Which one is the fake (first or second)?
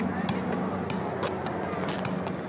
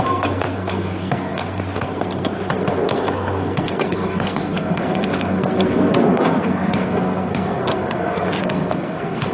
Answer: second